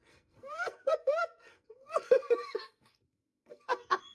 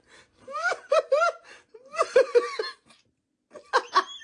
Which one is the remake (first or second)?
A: first